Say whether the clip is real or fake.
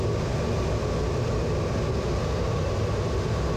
real